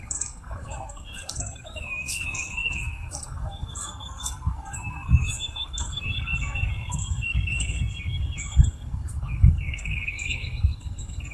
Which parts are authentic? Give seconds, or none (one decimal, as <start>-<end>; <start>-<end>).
none